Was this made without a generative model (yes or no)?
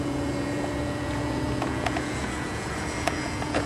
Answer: no